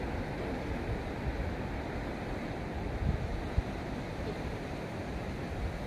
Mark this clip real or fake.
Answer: real